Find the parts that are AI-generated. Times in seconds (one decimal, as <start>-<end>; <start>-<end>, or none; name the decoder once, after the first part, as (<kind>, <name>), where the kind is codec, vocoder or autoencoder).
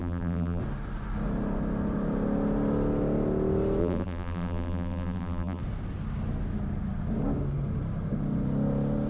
0.0-0.6 (vocoder, BigVGAN v2); 3.8-5.6